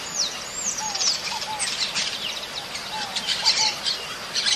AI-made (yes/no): no